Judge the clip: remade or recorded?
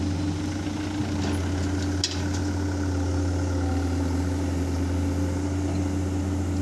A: recorded